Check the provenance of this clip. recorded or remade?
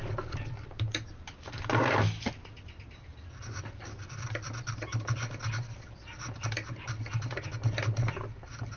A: recorded